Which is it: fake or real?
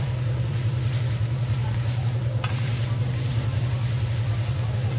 fake